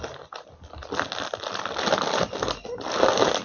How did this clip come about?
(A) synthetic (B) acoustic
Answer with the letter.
B